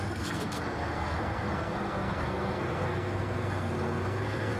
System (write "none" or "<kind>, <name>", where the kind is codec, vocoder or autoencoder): codec, SNAC